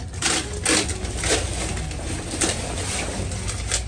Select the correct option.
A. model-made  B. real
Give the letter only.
B